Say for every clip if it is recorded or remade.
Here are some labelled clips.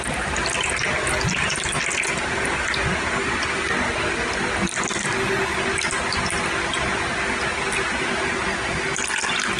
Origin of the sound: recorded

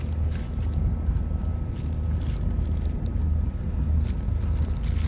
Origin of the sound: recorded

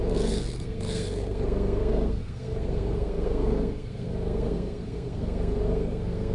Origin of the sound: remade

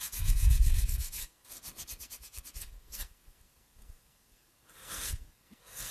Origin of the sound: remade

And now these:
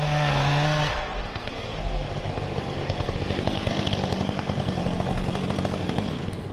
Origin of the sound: remade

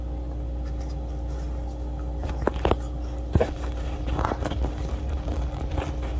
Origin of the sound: recorded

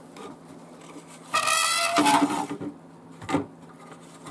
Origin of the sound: recorded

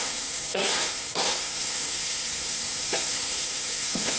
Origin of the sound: remade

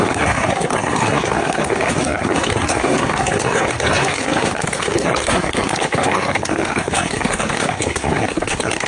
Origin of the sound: remade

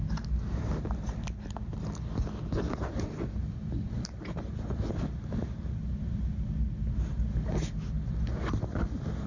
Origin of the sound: recorded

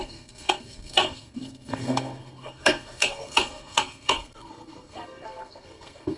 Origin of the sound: remade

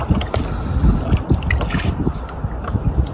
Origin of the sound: recorded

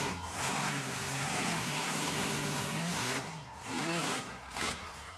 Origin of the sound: remade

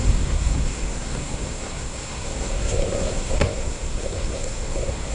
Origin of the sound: remade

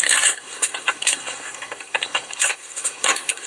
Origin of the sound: remade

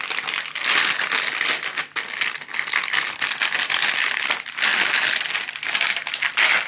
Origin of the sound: recorded